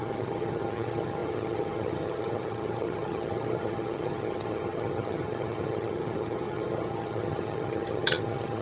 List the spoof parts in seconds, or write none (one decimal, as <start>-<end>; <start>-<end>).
0.0-8.6